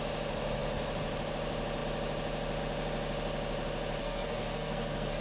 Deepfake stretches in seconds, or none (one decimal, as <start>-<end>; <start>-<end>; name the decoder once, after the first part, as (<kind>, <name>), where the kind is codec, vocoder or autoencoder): 4.0-5.2 (codec, SNAC)